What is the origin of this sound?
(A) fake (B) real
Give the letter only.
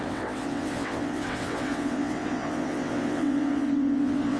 A